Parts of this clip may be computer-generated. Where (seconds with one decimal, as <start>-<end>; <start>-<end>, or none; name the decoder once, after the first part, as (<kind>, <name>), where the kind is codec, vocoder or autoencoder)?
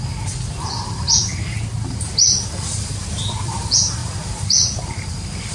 0.0-5.5 (vocoder, BigVGAN v2)